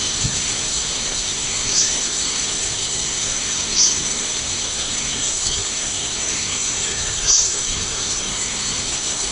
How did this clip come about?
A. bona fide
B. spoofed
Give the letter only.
B